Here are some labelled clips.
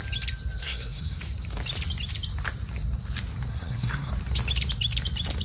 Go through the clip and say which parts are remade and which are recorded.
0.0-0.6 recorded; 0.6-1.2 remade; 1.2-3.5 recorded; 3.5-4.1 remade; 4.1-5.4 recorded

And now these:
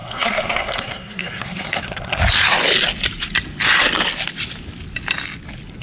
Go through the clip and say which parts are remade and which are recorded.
0.0-2.2 remade; 2.2-5.8 recorded